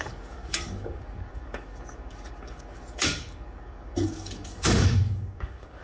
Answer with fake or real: fake